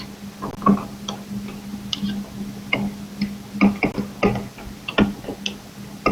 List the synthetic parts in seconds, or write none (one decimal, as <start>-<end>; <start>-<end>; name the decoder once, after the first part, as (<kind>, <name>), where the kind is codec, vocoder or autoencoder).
none